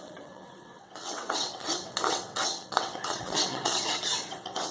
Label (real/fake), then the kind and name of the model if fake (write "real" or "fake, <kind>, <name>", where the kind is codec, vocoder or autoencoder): fake, vocoder, WaveNeXt